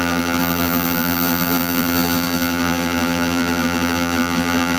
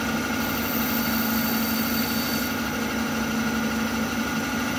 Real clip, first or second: second